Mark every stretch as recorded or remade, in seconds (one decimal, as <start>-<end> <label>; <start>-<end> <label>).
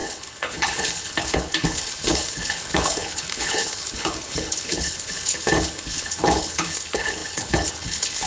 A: 0.0-8.3 remade